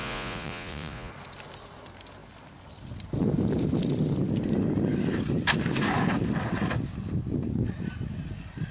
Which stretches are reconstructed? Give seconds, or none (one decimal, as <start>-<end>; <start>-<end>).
0.0-1.1